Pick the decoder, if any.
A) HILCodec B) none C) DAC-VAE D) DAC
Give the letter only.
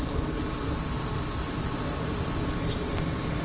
B